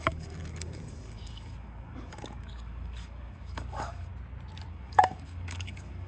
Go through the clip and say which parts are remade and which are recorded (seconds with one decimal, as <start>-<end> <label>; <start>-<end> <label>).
0.0-4.1 remade; 4.1-4.7 recorded; 4.7-6.1 remade